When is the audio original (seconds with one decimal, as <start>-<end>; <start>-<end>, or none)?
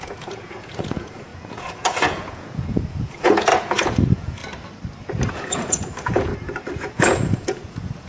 4.4-5.3; 6.3-6.9